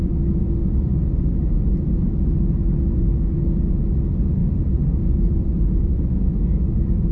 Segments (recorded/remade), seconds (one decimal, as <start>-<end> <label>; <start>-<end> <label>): 0.0-4.4 recorded; 4.4-6.3 remade; 6.3-7.1 recorded